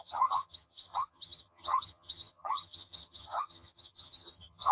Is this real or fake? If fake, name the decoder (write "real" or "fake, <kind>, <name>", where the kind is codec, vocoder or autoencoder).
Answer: fake, vocoder, HiFi-GAN